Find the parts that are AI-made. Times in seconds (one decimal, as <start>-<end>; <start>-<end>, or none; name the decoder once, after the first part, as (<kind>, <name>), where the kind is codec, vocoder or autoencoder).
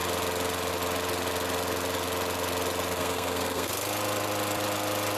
2.9-3.7 (codec, SNAC)